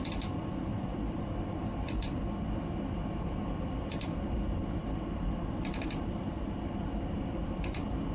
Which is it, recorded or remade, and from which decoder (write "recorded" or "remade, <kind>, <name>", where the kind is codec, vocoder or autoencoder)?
remade, vocoder, BigVGAN v2